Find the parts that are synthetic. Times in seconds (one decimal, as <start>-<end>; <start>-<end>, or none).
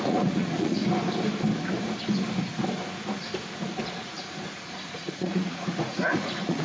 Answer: 0.0-0.8; 3.9-6.6